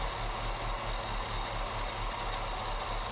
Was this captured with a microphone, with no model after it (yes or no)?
yes